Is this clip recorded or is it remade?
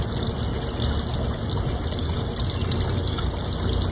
recorded